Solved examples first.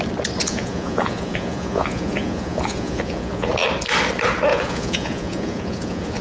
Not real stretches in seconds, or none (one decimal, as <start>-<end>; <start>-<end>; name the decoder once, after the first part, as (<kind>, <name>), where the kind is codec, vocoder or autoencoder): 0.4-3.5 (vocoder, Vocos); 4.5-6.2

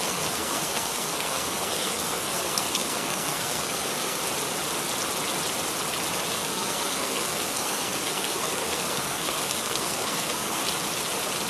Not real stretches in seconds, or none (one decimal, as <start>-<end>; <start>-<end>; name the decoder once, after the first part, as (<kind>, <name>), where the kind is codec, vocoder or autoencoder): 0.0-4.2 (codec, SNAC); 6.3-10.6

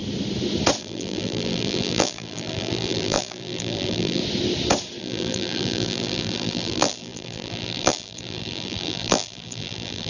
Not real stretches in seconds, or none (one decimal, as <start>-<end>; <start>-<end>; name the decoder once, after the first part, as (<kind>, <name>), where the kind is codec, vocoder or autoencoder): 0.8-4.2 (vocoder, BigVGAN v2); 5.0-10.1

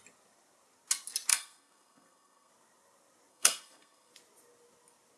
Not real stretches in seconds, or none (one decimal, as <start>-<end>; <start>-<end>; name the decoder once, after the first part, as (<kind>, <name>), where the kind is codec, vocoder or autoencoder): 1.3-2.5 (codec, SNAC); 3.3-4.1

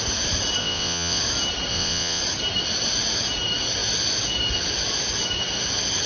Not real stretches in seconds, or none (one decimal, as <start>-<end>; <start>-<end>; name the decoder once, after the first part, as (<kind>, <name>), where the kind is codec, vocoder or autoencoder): 0.6-1.2 (vocoder, WaveNeXt); 1.7-2.2

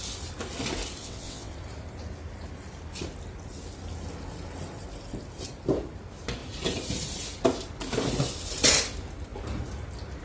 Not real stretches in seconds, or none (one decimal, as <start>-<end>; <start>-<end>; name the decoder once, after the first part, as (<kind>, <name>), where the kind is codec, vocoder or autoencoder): 1.0-1.5 (vocoder, WaveNeXt)

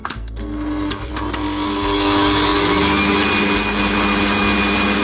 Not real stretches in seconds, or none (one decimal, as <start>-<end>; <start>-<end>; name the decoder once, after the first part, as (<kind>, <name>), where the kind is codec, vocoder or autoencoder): 0.0-1.1 (codec, SNAC)